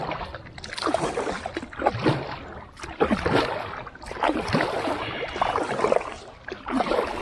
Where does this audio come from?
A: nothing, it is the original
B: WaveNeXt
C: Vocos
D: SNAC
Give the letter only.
A